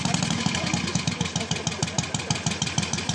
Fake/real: real